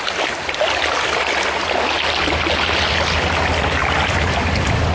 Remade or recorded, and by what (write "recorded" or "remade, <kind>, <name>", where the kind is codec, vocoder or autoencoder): recorded